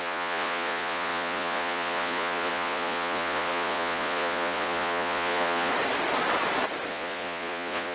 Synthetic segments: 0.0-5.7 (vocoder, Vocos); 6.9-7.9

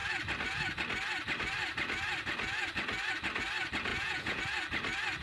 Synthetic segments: 3.9-4.4 (vocoder, Vocos)

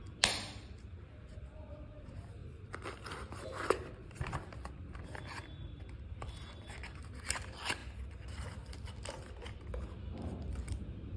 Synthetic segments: 0.0-2.4 (vocoder, BigVGAN v2); 3.9-5.4; 6.2-7.8; 10.1-11.2

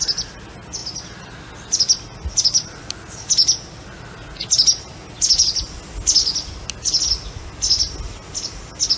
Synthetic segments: none

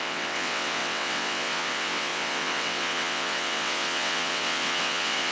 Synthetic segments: 0.0-5.3 (vocoder, WaveNeXt)

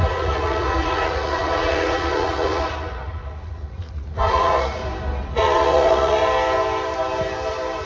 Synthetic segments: 0.0-4.8 (vocoder, Vocos); 5.3-6.2

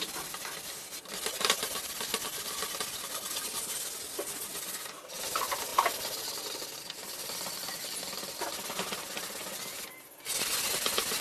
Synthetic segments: none